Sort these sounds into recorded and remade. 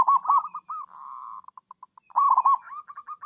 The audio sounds recorded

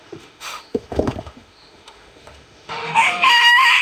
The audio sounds remade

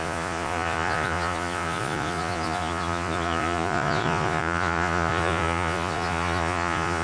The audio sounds remade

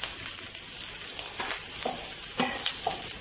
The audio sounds recorded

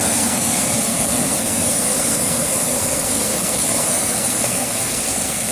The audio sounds remade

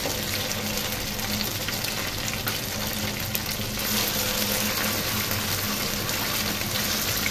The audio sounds recorded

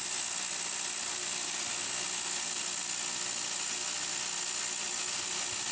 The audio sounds recorded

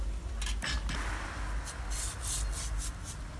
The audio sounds recorded